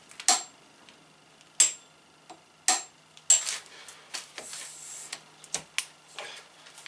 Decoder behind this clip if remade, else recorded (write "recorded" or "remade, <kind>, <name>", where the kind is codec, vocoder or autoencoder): recorded